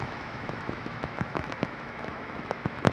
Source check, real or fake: fake